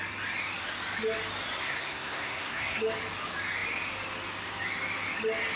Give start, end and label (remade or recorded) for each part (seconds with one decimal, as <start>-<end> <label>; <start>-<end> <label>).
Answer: 0.0-1.6 recorded; 1.6-2.8 remade; 2.8-5.6 recorded